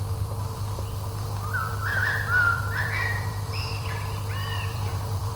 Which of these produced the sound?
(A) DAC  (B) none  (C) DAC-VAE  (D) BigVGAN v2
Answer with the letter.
D